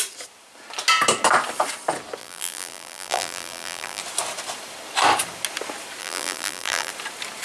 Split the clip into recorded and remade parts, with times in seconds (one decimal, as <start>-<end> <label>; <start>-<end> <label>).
0.0-2.2 recorded; 2.2-4.0 remade; 4.0-6.0 recorded; 6.0-6.9 remade; 6.9-7.4 recorded